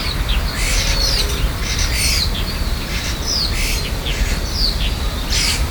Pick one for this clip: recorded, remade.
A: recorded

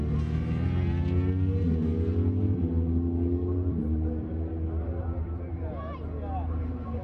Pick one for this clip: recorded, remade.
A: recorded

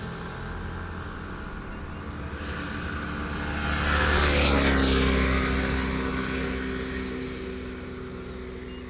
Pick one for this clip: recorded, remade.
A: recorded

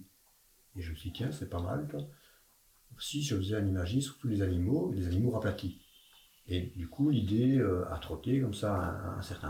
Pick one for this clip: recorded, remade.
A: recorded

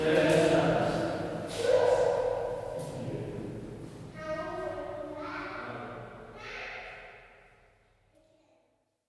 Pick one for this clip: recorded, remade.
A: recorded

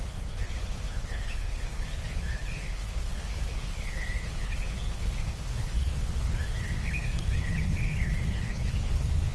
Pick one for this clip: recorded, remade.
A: remade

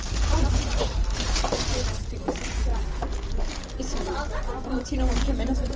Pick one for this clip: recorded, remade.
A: remade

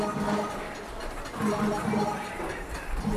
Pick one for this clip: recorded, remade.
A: recorded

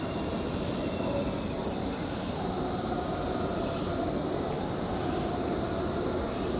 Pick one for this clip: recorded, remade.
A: recorded